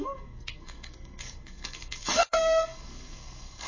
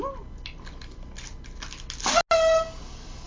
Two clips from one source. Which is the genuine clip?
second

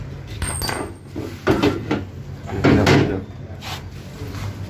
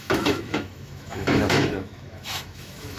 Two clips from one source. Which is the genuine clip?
first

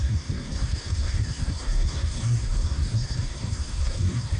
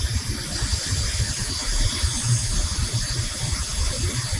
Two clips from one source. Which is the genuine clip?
second